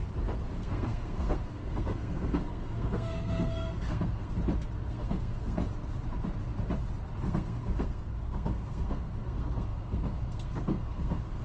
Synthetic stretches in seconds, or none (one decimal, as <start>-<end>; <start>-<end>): 0.5-4.3; 4.9-5.6; 7.2-11.4